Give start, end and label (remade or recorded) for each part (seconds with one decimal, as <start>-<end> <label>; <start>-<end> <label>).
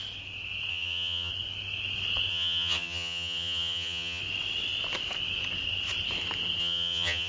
0.0-0.7 recorded; 0.7-1.3 remade; 1.3-2.3 recorded; 2.3-4.2 remade; 4.2-6.6 recorded; 6.6-7.3 remade